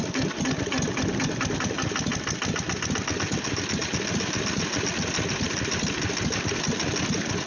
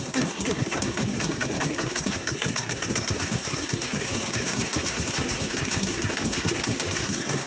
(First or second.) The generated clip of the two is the second